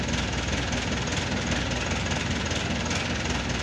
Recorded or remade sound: recorded